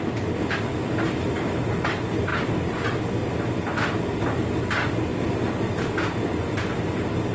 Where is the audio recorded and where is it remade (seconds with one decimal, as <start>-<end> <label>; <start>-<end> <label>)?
0.0-7.3 recorded